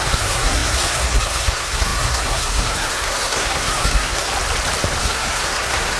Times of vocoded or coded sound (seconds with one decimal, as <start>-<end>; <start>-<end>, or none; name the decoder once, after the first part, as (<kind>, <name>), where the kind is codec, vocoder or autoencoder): 0.0-4.3 (codec, SNAC); 5.0-6.0